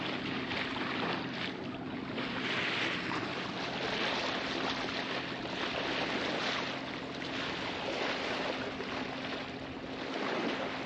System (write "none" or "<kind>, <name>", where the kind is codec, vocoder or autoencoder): none